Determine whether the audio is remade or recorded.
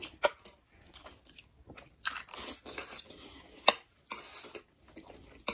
recorded